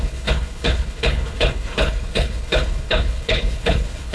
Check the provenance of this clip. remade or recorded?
remade